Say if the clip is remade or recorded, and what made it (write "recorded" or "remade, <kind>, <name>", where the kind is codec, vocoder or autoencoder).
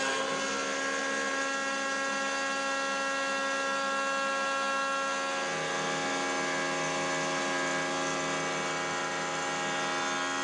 recorded